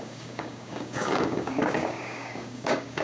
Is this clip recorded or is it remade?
remade